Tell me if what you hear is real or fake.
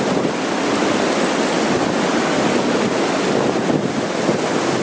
real